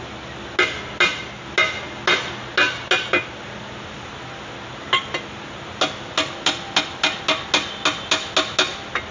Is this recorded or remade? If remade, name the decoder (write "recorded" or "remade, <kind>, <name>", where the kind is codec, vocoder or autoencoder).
recorded